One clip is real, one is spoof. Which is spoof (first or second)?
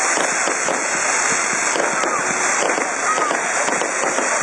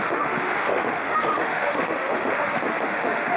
second